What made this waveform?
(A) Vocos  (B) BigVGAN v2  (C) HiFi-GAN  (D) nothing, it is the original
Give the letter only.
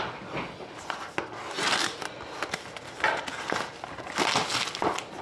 D